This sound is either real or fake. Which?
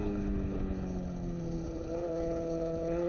fake